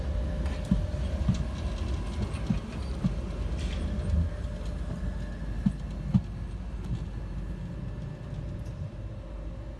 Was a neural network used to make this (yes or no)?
no